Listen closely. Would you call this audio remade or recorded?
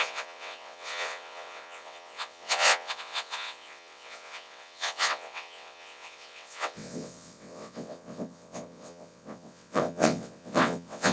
remade